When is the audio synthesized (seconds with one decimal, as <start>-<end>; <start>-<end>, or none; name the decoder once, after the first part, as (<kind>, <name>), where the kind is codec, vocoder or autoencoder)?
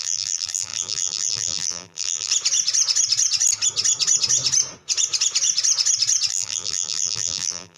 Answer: 0.0-2.3 (vocoder, BigVGAN v2); 6.3-7.8